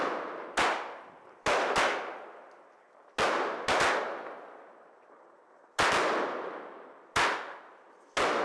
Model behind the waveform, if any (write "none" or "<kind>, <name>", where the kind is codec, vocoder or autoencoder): none